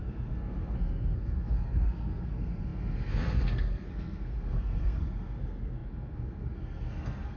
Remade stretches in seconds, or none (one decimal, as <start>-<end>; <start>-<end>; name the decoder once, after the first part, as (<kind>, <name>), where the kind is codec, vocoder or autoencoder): 0.0-7.4 (codec, SNAC)